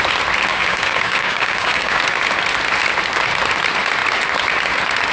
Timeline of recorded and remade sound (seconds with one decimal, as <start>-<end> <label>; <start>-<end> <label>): 0.0-0.5 recorded; 0.5-2.0 remade; 2.0-5.1 recorded